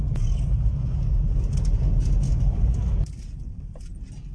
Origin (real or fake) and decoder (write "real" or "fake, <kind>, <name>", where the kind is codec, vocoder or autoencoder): real